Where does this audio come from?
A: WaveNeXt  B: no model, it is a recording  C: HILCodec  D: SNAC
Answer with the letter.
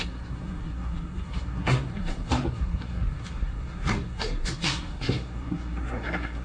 D